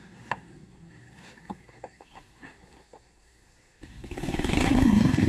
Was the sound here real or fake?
fake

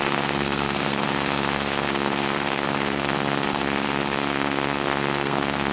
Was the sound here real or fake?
fake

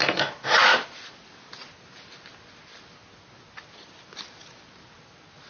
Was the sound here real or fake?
real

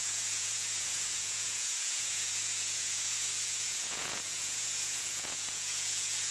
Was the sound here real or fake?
fake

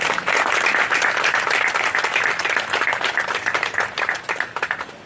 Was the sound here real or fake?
real